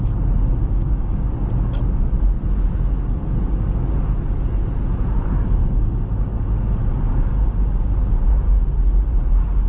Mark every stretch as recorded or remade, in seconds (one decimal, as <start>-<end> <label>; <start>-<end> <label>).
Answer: 0.0-0.6 recorded; 0.6-1.2 remade; 1.2-5.6 recorded; 5.6-6.5 remade; 6.5-9.7 recorded